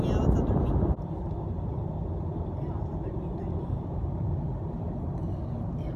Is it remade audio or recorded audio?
recorded